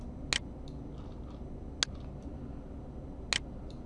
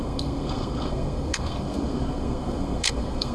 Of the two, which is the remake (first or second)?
second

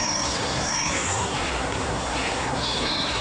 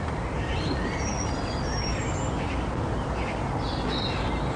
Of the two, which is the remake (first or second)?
first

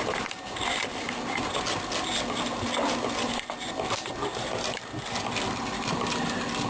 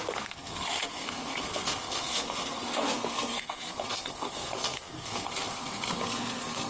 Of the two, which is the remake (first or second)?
second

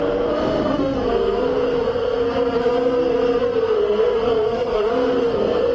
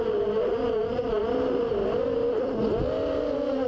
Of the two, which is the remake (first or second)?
first